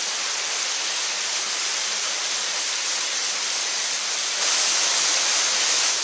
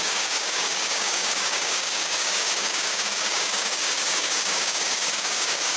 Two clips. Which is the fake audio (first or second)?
second